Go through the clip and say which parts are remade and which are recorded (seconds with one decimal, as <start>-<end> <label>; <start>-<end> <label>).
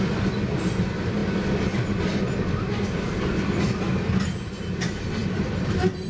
0.0-6.1 recorded